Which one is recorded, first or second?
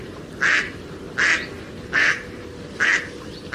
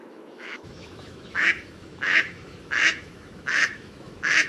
first